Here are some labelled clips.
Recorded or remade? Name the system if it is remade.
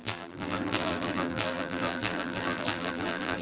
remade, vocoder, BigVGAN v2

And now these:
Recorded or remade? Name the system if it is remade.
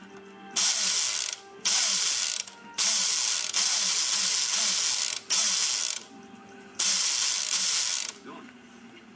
recorded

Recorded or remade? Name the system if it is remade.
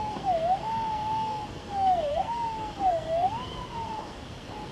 remade, codec, SNAC